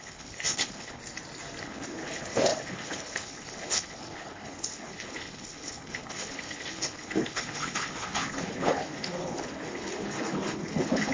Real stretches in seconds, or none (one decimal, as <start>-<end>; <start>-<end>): 1.0-1.6